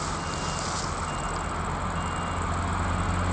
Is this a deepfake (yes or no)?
no